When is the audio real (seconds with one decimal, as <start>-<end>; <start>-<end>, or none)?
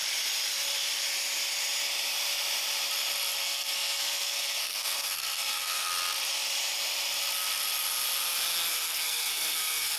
0.0-3.4; 5.9-8.7